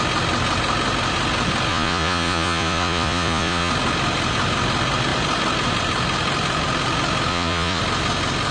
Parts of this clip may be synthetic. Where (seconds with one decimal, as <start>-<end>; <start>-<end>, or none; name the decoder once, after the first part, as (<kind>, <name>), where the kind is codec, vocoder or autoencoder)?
1.7-3.7 (vocoder, Vocos); 7.3-7.8